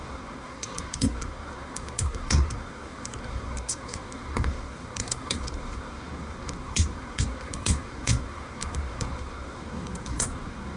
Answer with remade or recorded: remade